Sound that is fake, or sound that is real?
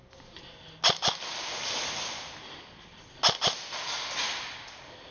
real